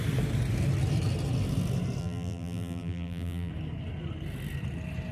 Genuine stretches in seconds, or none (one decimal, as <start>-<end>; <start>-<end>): 0.0-2.0; 3.5-5.1